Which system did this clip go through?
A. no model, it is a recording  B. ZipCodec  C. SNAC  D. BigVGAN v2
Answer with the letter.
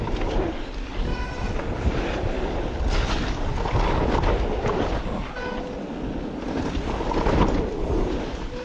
A